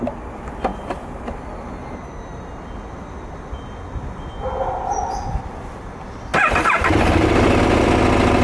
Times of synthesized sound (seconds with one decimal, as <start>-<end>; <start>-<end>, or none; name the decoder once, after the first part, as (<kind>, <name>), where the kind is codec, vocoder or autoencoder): none